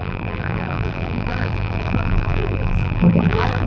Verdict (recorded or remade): remade